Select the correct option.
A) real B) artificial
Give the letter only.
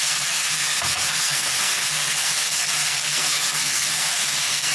B